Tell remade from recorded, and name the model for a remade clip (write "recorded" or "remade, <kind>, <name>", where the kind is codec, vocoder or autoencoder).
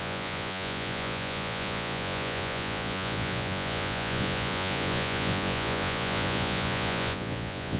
remade, vocoder, Vocos